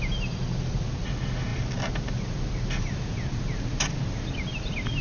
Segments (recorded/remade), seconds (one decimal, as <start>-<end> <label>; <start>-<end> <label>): 0.0-5.0 recorded